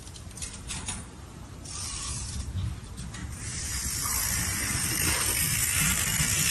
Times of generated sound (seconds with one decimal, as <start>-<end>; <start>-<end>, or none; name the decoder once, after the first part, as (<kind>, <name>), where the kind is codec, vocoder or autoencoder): 3.2-6.5 (vocoder, BigVGAN v2)